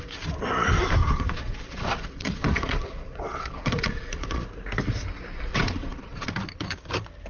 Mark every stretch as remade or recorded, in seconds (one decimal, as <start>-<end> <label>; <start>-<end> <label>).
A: 0.0-1.0 recorded; 1.0-4.5 remade; 4.5-5.5 recorded; 5.5-6.3 remade; 6.3-7.3 recorded